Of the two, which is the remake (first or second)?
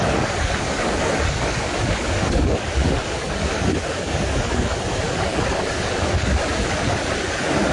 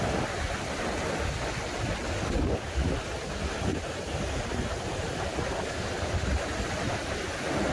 first